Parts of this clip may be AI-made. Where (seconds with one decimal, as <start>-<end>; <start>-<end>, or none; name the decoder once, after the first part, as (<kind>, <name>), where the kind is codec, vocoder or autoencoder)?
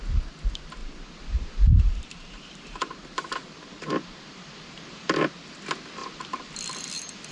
0.8-5.2 (vocoder, BigVGAN v2)